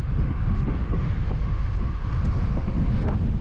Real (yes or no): no